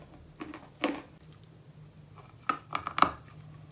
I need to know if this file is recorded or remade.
recorded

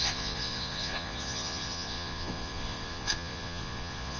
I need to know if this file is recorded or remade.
remade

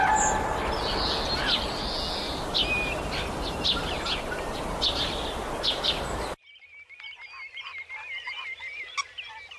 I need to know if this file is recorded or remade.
recorded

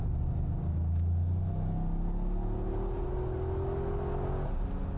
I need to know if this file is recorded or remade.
recorded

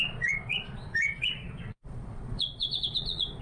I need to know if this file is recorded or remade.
remade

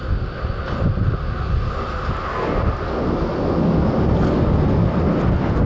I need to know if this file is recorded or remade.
recorded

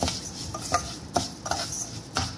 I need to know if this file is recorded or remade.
recorded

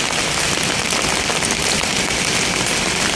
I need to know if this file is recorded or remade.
recorded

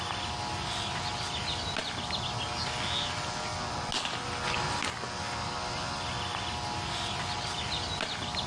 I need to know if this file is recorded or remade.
recorded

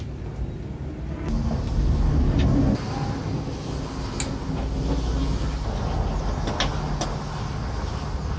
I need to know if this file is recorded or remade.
recorded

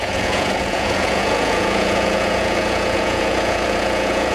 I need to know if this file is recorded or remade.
remade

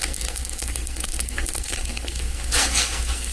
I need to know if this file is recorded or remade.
remade